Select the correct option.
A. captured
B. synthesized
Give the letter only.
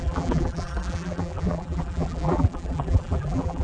B